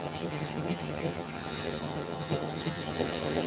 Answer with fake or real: fake